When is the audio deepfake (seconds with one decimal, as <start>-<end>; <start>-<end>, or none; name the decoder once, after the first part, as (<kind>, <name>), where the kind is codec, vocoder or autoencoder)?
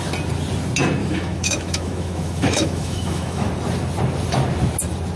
1.0-3.5 (autoencoder, DAC-VAE)